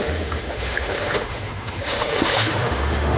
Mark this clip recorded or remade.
remade